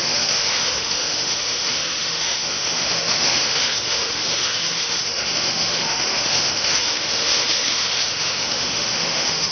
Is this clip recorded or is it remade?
remade